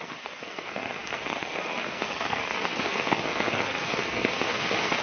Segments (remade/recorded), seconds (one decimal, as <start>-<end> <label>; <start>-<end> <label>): 0.0-5.0 remade